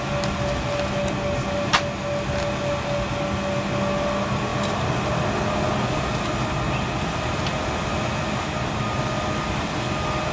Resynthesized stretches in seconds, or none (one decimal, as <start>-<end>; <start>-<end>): none